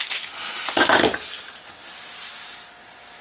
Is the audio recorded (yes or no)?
yes